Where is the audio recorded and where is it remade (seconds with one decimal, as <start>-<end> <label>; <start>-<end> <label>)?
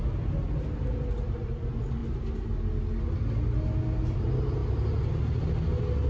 0.0-6.1 recorded